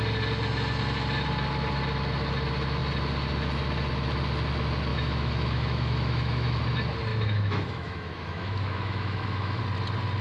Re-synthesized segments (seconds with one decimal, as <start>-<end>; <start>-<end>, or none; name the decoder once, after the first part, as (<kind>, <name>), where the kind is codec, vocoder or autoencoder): 4.9-6.6 (autoencoder, DAC-VAE); 7.1-9.6